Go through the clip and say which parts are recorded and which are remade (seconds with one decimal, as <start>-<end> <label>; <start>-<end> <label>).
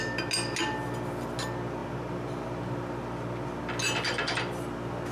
0.0-5.1 recorded